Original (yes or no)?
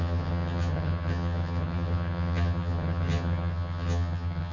no